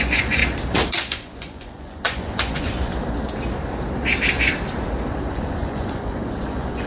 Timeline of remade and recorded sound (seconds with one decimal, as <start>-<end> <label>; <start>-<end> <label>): 0.0-0.4 remade; 0.4-0.9 recorded; 0.9-2.9 remade; 2.9-5.3 recorded; 5.3-6.9 remade